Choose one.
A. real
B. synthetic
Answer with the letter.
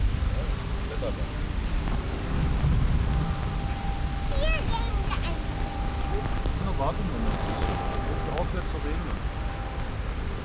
A